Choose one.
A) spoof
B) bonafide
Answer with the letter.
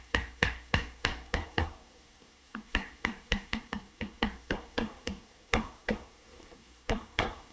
A